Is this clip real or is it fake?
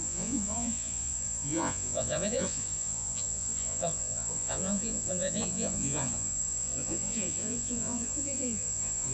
fake